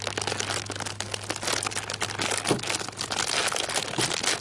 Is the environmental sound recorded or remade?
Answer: recorded